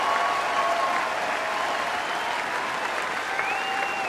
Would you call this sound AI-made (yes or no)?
no